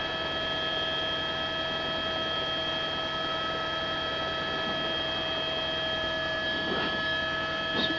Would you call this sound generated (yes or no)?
no